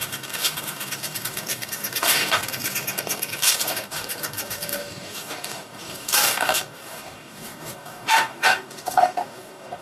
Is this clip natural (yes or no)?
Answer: no